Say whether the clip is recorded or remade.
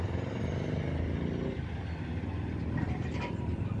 recorded